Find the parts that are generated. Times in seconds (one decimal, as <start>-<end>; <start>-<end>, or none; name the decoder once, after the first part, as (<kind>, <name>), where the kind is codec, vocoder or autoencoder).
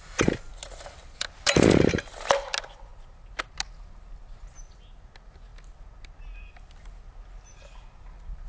none